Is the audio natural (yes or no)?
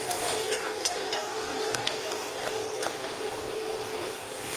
no